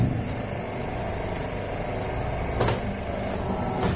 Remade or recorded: recorded